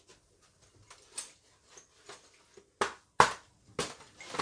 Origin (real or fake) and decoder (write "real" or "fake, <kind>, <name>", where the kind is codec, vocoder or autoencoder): real